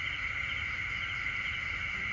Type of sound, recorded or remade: recorded